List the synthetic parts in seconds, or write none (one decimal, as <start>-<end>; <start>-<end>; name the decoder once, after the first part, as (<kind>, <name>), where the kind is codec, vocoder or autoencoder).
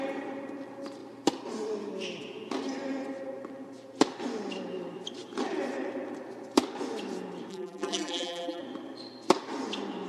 7.5-8.6 (vocoder, BigVGAN v2)